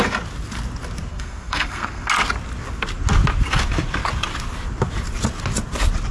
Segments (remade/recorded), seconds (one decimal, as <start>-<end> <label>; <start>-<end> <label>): 0.0-1.1 recorded; 1.1-2.1 remade; 2.1-6.1 recorded